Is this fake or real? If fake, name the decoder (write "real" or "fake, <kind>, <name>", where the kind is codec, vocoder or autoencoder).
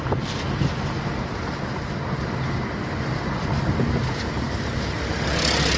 real